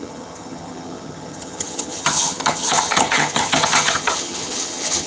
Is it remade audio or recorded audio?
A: remade